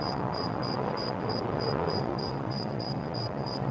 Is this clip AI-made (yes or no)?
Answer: yes